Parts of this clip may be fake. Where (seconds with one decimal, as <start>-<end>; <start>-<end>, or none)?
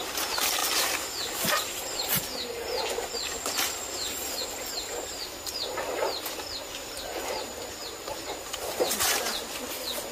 none